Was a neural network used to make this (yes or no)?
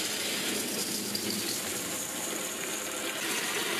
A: no